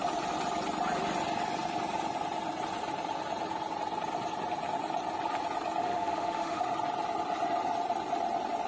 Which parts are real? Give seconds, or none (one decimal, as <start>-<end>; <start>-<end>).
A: 0.0-5.8; 6.6-8.7